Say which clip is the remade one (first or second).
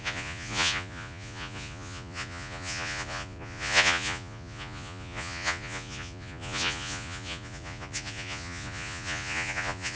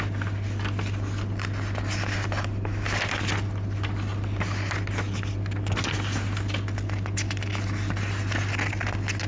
first